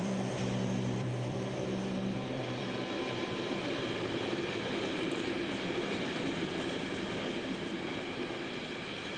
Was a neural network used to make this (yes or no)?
yes